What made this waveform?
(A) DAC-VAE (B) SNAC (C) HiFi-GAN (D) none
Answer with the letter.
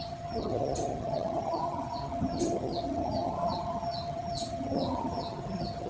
C